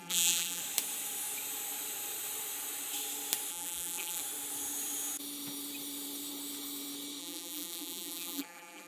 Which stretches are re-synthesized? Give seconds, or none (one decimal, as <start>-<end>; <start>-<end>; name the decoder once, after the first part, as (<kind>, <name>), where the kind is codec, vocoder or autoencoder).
0.0-0.6 (vocoder, BigVGAN v2); 3.5-4.2; 7.2-8.9